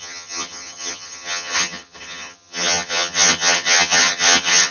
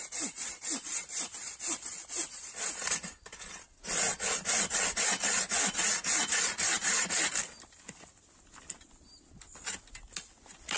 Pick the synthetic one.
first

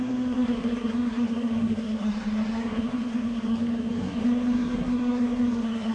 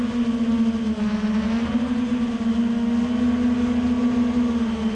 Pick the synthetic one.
first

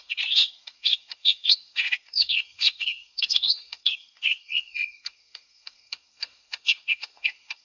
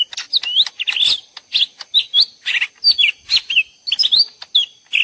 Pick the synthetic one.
first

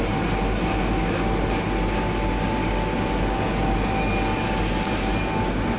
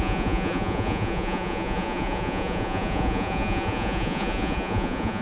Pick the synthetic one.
second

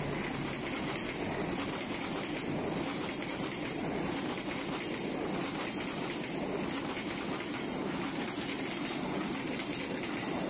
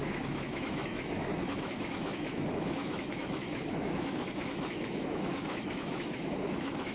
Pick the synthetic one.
second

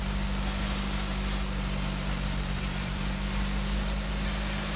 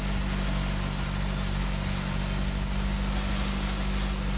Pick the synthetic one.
first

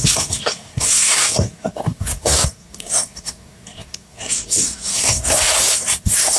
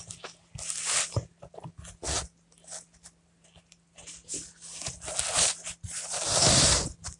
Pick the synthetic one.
first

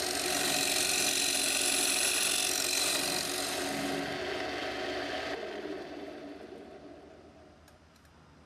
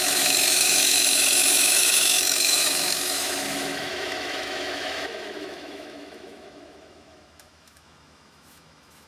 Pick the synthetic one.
second